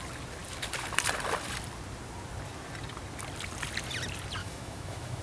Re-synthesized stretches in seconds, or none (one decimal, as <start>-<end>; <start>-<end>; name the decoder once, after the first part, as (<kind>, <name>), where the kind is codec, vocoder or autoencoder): 4.4-5.2 (autoencoder, DAC-VAE)